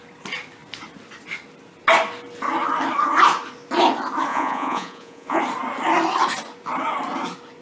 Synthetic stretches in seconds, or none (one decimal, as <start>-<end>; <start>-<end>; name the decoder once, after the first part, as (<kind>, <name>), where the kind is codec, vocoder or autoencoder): 4.3-5.4 (vocoder, Vocos)